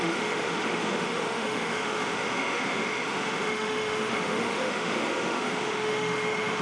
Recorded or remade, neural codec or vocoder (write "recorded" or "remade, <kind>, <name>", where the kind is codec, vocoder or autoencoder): remade, autoencoder, DAC-VAE